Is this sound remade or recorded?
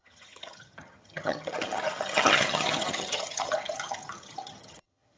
remade